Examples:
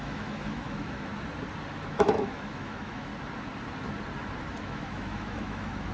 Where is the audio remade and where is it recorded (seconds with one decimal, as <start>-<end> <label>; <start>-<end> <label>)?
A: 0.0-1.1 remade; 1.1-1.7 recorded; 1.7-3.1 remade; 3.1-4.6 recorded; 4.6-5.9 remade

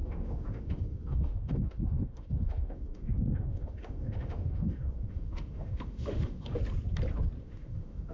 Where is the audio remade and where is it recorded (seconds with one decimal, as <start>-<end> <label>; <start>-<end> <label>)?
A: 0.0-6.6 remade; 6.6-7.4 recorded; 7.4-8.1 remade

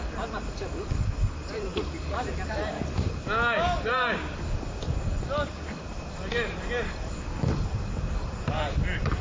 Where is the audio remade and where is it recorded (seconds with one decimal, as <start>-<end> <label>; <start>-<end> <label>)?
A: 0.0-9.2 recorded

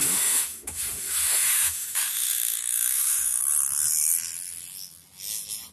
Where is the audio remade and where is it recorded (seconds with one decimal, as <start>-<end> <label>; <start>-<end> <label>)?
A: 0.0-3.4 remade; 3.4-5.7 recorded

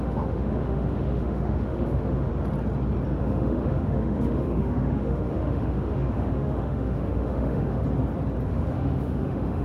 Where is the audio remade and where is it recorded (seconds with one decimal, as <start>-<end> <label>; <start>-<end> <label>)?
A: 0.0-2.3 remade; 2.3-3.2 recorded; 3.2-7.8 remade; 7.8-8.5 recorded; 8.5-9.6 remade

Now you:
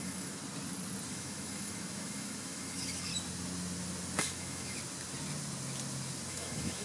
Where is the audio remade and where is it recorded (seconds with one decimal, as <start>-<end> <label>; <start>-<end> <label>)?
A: 0.0-0.4 remade; 0.4-1.1 recorded; 1.1-3.1 remade; 3.1-4.2 recorded; 4.2-4.8 remade; 4.8-6.3 recorded; 6.3-6.8 remade

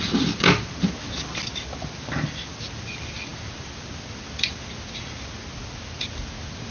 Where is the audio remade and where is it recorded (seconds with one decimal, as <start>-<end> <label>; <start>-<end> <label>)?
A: 0.0-6.7 recorded